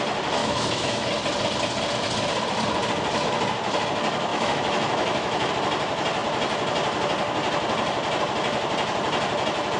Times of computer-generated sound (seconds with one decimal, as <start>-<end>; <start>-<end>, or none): 0.4-1.1; 4.3-5.5